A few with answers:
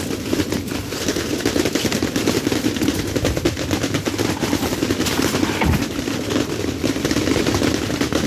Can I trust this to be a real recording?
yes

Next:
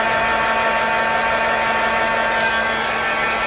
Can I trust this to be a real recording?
yes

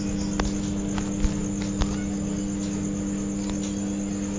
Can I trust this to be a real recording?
yes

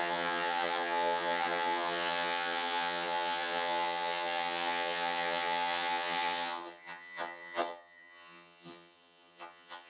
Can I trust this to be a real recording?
no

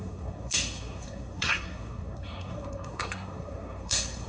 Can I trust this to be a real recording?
no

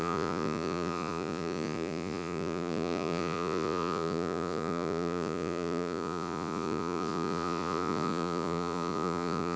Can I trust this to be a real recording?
no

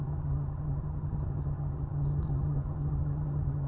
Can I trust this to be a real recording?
no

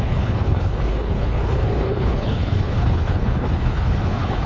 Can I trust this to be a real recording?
no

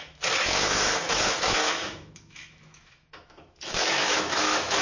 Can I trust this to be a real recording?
no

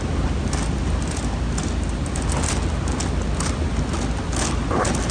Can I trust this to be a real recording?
yes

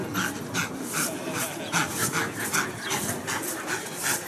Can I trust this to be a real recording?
yes